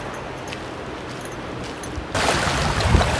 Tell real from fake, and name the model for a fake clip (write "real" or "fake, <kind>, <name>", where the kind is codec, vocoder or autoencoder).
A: real